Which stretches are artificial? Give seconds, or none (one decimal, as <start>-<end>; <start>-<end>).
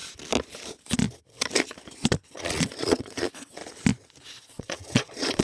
2.3-3.6; 4.4-5.4